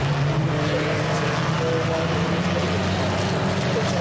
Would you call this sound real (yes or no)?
yes